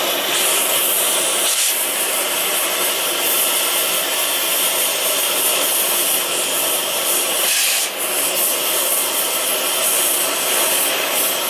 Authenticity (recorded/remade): recorded